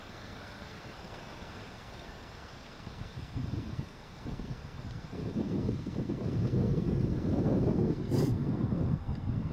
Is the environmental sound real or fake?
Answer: fake